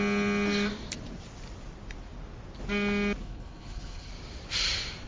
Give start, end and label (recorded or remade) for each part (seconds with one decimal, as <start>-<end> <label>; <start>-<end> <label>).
0.0-3.2 recorded; 3.2-4.1 remade; 4.1-5.1 recorded